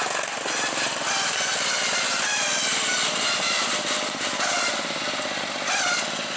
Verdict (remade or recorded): remade